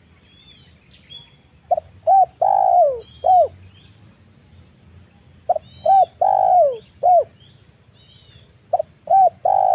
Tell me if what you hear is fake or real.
real